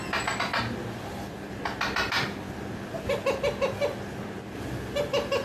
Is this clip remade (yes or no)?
no